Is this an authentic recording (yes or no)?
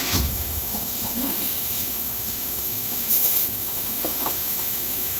no